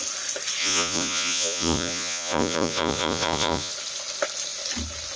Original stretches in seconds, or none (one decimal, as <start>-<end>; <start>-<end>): 0.0-0.6; 3.7-5.2